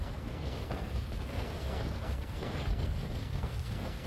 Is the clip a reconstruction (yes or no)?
yes